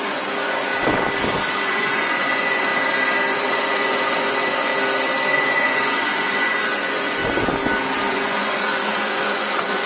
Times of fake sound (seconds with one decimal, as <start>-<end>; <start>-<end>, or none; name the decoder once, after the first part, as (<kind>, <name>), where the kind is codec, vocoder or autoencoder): 0.0-0.7 (vocoder, Vocos); 1.6-2.7; 3.3-4.7; 5.3-7.2; 8.1-9.9